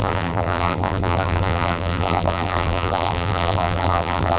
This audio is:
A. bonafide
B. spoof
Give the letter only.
B